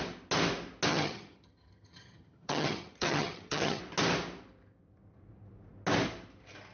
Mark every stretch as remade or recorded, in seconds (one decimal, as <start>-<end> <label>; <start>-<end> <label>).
0.0-0.9 recorded; 0.9-3.8 remade; 3.8-6.7 recorded